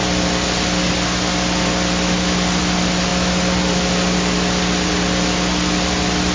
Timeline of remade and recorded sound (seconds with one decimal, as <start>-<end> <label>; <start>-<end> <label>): 0.0-6.3 recorded